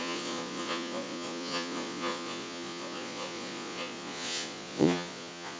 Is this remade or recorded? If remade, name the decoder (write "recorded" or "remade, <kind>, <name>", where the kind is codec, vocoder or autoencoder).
remade, vocoder, Vocos